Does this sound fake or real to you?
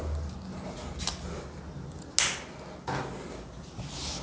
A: real